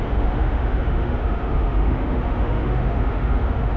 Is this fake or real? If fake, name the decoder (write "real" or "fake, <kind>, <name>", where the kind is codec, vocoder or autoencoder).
fake, autoencoder, DAC-VAE